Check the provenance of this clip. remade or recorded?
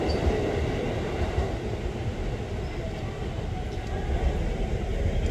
recorded